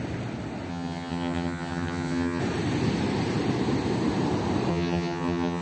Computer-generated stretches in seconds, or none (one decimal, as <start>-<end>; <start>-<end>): 0.7-2.4; 4.7-5.6